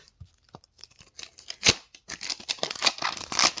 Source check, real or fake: real